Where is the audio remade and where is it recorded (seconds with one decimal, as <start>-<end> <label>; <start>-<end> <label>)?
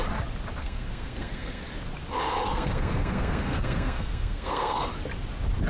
0.0-0.6 recorded; 0.6-1.6 remade; 1.6-2.5 recorded; 2.5-4.9 remade; 4.9-5.7 recorded